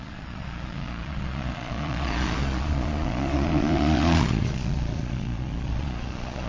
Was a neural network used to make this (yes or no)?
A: yes